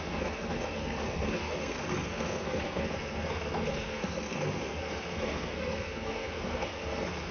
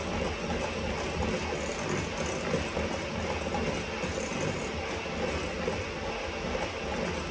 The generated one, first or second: first